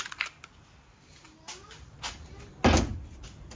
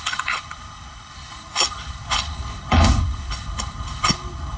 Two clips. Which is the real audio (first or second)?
first